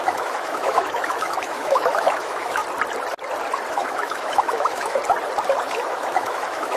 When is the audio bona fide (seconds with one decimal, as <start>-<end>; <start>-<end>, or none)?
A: 2.6-3.7; 5.0-5.6